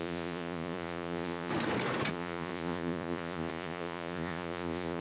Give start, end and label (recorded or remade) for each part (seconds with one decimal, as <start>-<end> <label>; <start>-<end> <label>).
0.0-1.5 remade; 1.5-2.1 recorded; 2.1-5.0 remade